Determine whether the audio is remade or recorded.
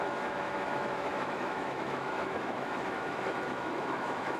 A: remade